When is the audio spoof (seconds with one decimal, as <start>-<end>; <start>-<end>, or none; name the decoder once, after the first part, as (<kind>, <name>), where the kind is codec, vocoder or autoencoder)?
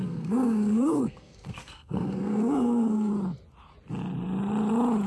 0.0-3.1 (codec, SNAC)